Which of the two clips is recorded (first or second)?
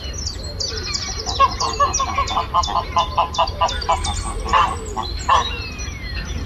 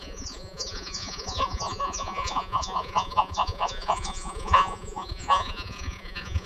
first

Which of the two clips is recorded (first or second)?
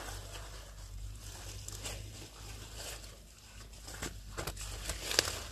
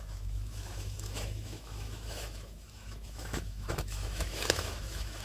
first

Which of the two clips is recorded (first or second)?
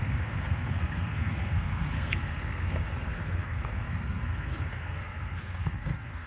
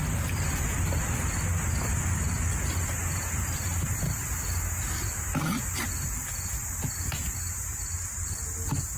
second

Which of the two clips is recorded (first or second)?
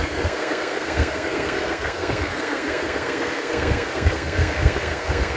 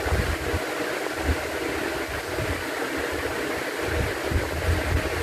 second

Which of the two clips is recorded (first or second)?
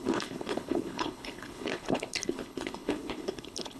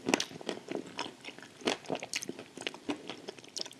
second